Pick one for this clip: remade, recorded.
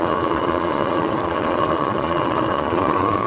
remade